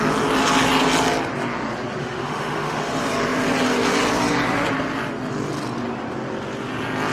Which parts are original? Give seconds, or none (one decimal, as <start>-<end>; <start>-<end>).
0.0-2.0; 2.9-7.1